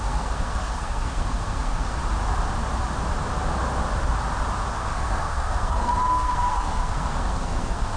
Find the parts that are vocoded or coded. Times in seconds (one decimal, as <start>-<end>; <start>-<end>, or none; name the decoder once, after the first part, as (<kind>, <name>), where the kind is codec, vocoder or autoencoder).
0.0-2.0 (codec, SNAC); 4.7-8.0